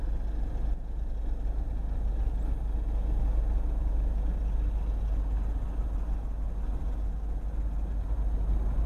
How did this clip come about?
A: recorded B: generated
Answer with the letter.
A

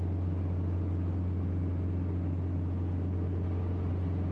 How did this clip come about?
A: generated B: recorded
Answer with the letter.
B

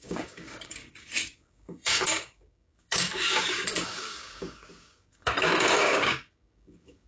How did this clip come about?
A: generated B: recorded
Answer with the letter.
A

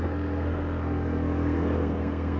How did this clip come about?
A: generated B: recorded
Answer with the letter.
A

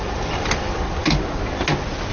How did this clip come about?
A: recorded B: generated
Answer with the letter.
A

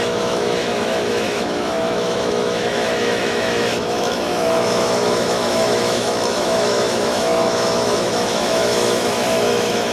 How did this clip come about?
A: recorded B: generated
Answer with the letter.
B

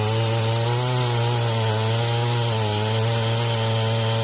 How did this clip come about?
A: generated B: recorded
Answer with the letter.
B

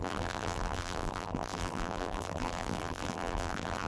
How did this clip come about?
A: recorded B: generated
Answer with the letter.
B